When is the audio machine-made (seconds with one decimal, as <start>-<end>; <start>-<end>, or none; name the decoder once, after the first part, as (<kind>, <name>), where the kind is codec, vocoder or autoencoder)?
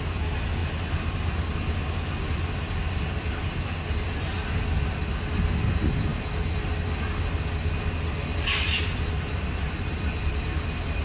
none